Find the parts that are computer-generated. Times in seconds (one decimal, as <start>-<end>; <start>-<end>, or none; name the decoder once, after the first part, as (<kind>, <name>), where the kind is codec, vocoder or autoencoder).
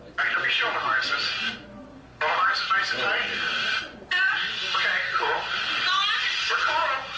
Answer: none